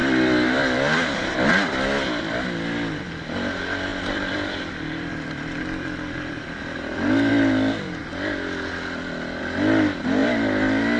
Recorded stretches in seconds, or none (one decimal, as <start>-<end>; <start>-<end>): 1.5-3.9; 7.3-11.0